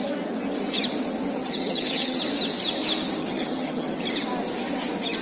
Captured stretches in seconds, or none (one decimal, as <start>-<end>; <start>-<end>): 0.0-1.4; 2.2-3.2; 4.0-5.2